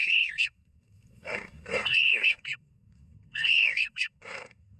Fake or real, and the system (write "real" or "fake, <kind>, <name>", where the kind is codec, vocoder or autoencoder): fake, codec, SNAC